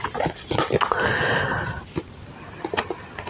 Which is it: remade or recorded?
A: recorded